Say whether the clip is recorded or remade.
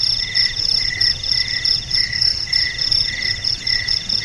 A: remade